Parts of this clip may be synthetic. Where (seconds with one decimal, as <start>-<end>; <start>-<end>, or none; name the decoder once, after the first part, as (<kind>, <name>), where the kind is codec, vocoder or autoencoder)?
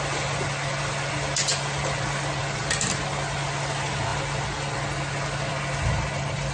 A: none